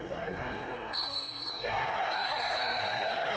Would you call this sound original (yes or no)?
no